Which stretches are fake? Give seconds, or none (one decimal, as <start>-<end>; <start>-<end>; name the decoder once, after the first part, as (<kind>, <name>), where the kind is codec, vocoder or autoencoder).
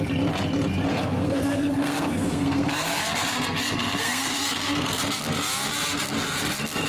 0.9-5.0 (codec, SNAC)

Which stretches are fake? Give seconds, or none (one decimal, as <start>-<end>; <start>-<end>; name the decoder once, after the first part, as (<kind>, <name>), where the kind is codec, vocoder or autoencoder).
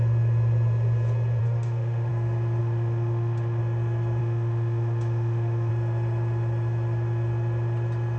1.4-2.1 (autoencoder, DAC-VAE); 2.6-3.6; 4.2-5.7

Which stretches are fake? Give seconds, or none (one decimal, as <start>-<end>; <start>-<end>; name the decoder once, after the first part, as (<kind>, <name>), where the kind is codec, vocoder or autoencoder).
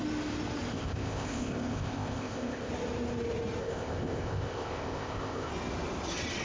0.7-2.7 (codec, ZipCodec); 3.6-5.5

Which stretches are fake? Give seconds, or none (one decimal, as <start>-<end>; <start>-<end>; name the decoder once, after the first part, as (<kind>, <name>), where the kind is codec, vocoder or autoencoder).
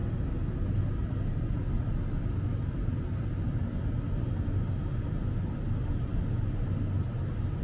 none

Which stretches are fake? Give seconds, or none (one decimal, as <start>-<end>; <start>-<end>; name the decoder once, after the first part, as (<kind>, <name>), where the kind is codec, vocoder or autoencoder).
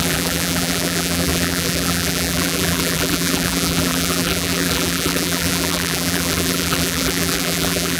0.0-8.0 (vocoder, BigVGAN v2)